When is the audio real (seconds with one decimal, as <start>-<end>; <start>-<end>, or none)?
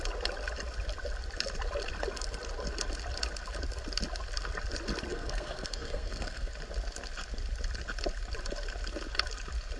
0.0-5.1; 6.5-9.8